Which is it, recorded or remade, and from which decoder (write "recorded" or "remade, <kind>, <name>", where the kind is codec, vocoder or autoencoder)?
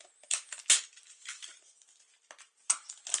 recorded